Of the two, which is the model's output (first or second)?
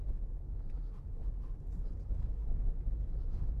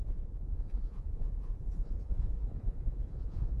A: second